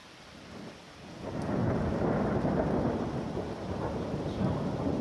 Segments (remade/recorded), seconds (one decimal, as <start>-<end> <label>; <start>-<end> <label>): 0.0-5.0 recorded